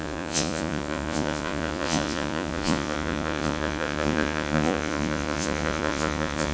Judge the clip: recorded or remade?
remade